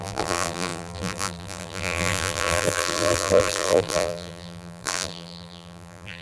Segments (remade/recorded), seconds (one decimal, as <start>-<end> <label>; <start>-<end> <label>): 0.0-6.2 remade